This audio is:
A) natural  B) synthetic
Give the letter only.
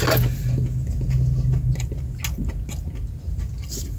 A